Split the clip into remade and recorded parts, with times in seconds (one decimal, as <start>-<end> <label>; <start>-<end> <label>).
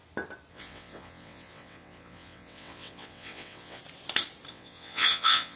0.0-0.5 recorded; 0.5-3.8 remade; 3.8-4.5 recorded; 4.5-5.6 remade